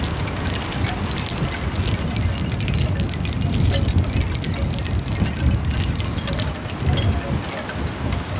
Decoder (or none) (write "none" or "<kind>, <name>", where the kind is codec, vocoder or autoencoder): none